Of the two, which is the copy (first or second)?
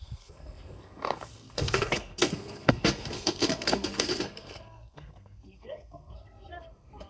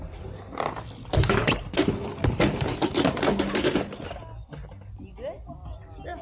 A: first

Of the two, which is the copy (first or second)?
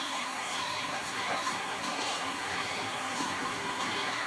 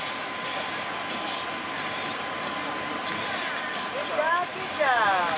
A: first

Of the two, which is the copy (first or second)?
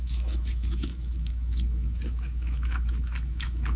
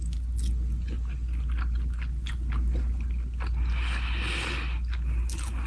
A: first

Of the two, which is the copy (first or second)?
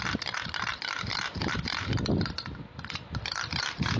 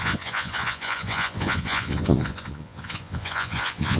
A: second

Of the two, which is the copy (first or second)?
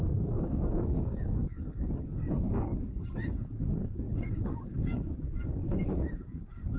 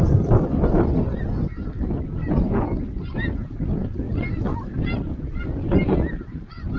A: first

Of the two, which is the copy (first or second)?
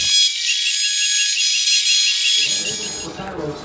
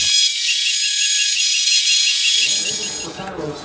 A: second